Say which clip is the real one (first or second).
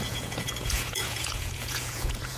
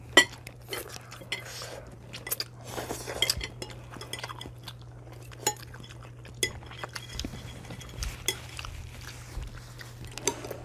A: second